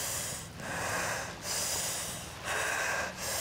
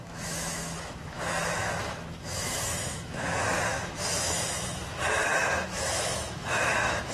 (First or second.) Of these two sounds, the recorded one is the first